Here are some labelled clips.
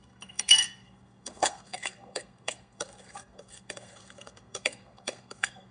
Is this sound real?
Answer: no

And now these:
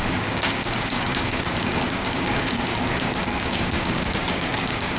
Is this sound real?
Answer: no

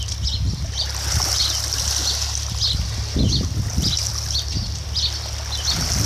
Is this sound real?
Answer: yes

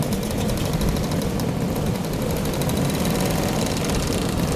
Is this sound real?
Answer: yes